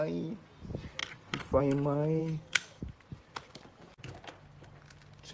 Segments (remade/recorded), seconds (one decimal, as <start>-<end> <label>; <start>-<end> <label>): 0.0-2.2 recorded; 2.2-2.8 remade; 2.8-5.3 recorded